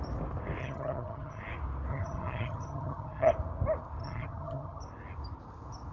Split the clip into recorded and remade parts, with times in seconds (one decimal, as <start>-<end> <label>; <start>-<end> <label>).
0.0-0.6 recorded; 0.6-1.4 remade; 1.4-1.9 recorded; 1.9-3.3 remade; 3.3-4.0 recorded; 4.0-4.8 remade; 4.8-5.9 recorded